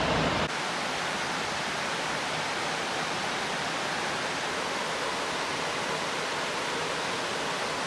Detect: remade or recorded recorded